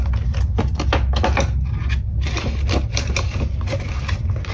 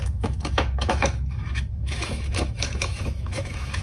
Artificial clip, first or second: second